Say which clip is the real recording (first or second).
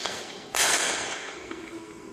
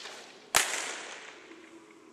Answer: second